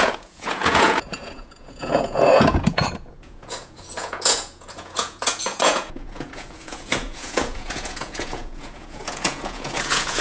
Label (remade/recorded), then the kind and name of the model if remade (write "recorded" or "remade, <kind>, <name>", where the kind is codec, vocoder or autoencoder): remade, vocoder, Vocos